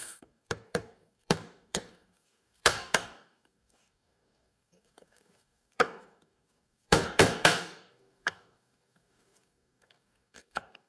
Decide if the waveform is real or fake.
fake